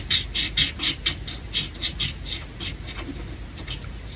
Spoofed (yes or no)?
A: no